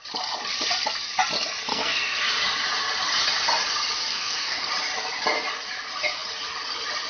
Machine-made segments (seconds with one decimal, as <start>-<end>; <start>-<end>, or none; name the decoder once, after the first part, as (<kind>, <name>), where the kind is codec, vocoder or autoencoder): 1.7-2.3 (codec, SNAC); 4.1-4.7